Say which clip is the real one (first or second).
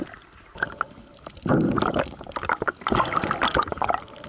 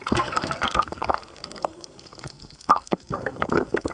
first